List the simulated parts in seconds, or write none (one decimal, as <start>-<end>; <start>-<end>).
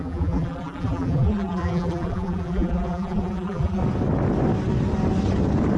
0.0-3.8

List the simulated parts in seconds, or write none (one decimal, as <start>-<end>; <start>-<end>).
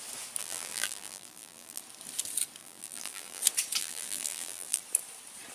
0.4-1.8; 2.6-3.4; 3.8-4.8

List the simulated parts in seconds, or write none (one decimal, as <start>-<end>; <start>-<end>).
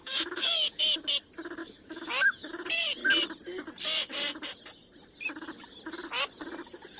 0.0-0.8; 1.6-2.5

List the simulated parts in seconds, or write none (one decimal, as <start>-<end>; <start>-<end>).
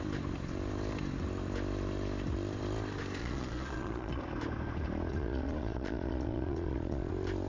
3.2-4.2; 5.1-7.1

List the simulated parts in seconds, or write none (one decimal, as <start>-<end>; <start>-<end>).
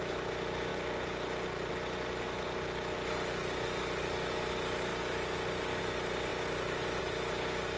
none